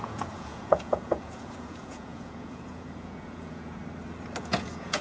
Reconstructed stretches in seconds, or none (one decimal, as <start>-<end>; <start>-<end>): 0.0-3.8; 4.4-5.0